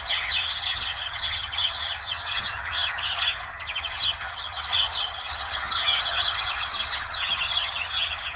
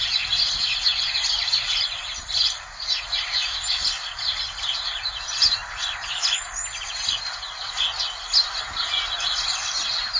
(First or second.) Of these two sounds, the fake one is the first